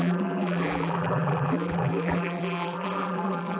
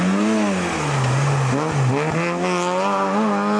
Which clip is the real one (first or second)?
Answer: second